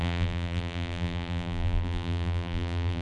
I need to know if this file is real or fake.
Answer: fake